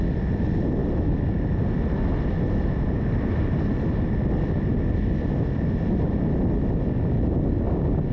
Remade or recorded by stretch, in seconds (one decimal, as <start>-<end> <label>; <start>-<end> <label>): 0.0-8.1 recorded